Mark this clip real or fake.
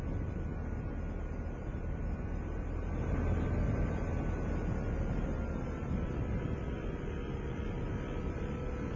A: real